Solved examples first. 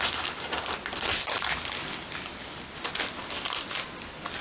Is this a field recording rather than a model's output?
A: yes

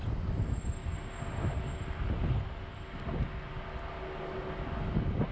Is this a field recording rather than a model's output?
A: yes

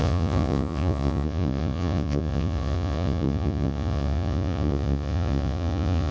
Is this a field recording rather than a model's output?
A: no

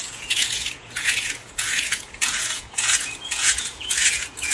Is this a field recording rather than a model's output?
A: no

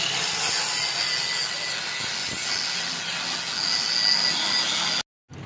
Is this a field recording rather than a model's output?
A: yes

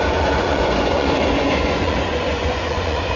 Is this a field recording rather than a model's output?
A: no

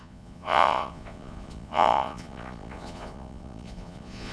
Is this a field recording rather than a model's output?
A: no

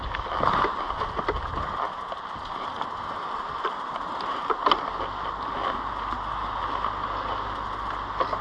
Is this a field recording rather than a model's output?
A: yes